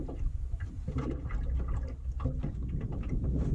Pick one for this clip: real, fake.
real